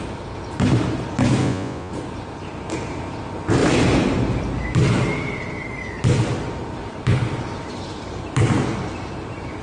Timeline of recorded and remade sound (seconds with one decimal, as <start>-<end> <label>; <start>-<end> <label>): 0.0-1.4 recorded; 1.4-1.9 remade; 1.9-9.6 recorded